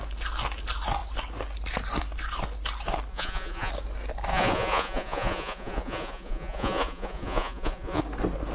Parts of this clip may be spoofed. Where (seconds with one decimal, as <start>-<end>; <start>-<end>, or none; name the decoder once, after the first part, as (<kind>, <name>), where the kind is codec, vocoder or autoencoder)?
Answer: 3.1-3.7 (vocoder, Vocos); 4.3-8.0